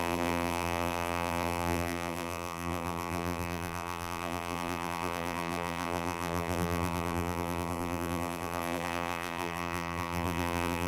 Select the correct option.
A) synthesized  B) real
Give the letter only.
A